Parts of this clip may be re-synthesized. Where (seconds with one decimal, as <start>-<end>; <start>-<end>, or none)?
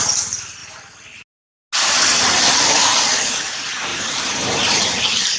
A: 3.9-5.0